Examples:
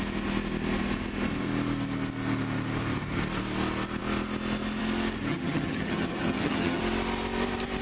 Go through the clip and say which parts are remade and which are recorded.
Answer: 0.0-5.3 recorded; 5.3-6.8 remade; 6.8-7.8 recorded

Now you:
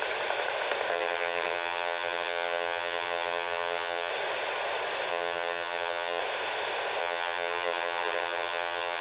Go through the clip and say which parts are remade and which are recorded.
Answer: 0.0-0.9 recorded; 0.9-4.1 remade; 4.1-5.1 recorded; 5.1-6.2 remade; 6.2-7.0 recorded; 7.0-9.0 remade

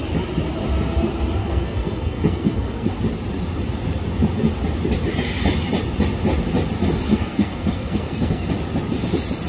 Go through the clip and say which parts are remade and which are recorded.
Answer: 0.0-1.4 recorded; 1.4-2.9 remade; 2.9-7.1 recorded; 7.1-8.5 remade; 8.5-9.5 recorded